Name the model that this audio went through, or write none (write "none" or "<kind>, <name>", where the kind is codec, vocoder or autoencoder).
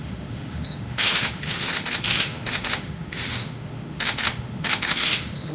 autoencoder, DAC-VAE